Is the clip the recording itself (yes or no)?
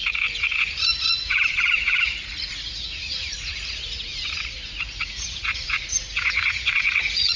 no